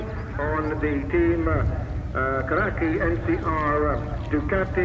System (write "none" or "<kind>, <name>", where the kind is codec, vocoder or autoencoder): none